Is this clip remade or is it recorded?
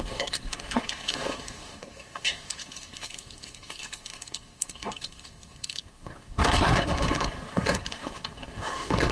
remade